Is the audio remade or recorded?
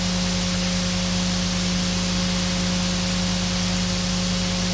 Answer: recorded